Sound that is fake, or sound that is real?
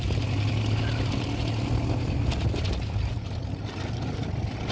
real